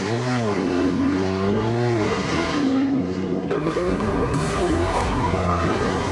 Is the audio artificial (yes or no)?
yes